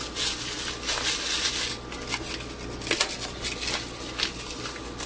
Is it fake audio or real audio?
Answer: real